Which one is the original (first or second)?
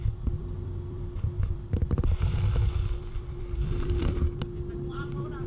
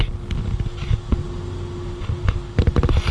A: second